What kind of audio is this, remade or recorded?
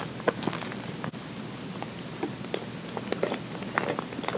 recorded